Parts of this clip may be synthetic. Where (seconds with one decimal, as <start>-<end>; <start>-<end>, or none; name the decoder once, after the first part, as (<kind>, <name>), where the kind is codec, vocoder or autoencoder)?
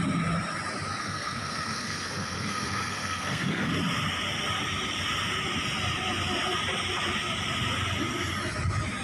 1.0-3.7 (codec, SNAC)